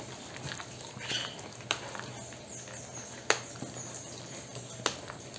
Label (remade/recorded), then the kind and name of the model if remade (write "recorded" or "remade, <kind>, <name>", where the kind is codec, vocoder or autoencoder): recorded